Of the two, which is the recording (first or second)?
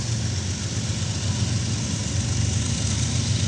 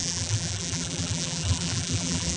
first